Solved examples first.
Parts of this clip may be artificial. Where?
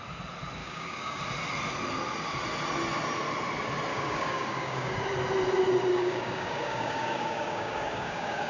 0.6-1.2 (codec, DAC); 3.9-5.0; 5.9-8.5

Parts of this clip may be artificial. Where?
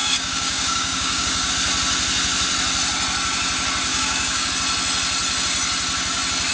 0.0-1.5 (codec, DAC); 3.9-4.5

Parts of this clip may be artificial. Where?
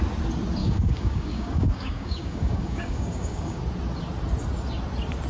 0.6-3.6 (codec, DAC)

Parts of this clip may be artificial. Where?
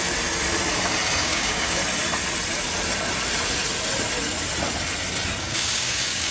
1.2-1.8 (codec, DAC); 5.4-6.3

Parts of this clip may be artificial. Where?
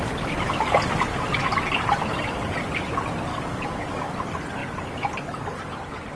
3.3-4.1 (codec, DAC)